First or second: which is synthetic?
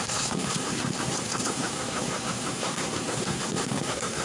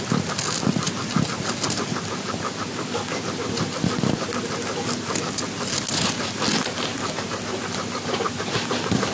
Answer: first